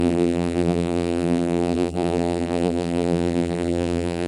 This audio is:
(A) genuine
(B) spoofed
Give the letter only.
B